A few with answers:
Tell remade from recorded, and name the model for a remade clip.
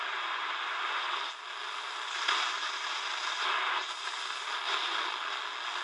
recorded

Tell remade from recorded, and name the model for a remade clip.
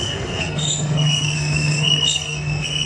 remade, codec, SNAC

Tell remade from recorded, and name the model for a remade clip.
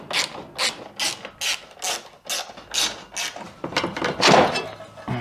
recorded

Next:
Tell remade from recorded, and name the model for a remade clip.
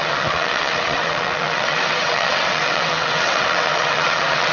remade, vocoder, WaveNeXt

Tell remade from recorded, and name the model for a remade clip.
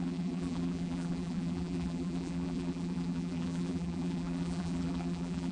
remade, vocoder, BigVGAN v2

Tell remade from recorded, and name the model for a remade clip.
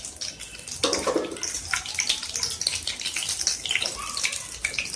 recorded